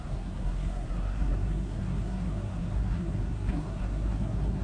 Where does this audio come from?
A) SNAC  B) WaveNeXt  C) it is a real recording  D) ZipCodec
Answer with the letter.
A